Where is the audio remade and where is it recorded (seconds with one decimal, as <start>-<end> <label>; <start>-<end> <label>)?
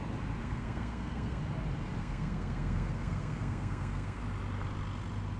0.0-0.4 recorded; 0.4-1.4 remade; 1.4-2.0 recorded; 2.0-4.2 remade; 4.2-5.4 recorded